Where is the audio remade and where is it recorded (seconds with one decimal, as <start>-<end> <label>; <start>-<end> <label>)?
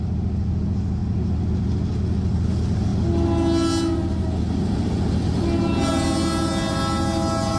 0.0-7.6 recorded